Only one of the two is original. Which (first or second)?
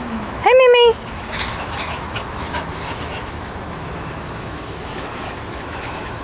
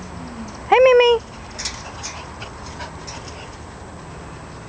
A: second